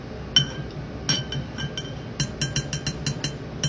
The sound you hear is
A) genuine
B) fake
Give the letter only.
A